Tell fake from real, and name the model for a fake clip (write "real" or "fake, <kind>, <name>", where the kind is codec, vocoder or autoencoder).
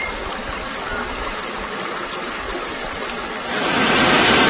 real